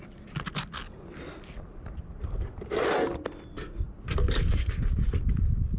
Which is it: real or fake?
real